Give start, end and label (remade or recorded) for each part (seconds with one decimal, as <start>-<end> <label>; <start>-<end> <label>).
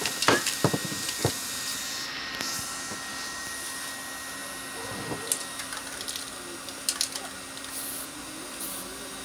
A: 0.0-9.2 recorded